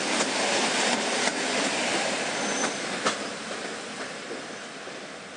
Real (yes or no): yes